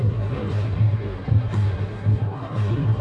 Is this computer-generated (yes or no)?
yes